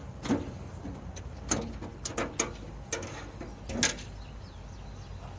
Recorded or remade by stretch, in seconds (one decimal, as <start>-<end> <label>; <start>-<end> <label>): 0.0-5.4 recorded